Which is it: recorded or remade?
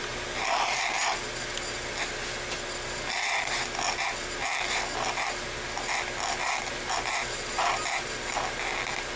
recorded